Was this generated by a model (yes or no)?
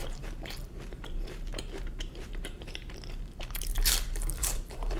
yes